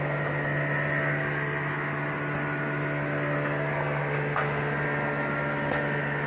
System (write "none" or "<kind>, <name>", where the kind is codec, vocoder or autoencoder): none